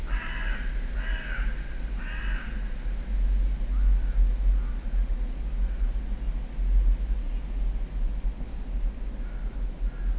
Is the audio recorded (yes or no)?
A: yes